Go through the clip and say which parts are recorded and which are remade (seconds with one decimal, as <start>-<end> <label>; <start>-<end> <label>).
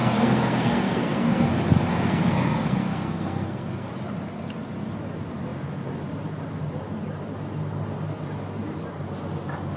0.0-1.5 remade; 1.5-1.9 recorded; 1.9-3.9 remade; 3.9-9.8 recorded